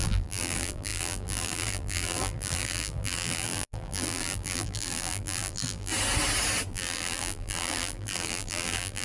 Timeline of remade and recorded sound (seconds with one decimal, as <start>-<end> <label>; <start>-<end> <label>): 0.0-5.9 remade; 5.9-6.7 recorded; 6.7-9.0 remade